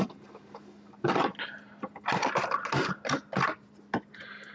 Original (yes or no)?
yes